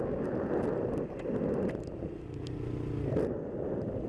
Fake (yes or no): no